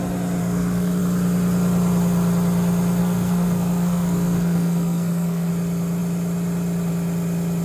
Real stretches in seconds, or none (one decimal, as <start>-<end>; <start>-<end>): 0.0-0.4; 1.0-3.0; 5.5-7.6